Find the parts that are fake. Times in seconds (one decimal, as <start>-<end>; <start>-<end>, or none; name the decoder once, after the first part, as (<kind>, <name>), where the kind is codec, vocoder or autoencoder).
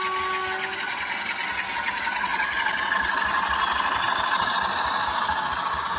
2.3-4.5 (vocoder, BigVGAN v2)